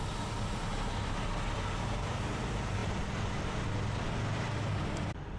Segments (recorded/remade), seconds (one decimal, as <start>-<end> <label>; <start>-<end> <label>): 0.0-5.4 recorded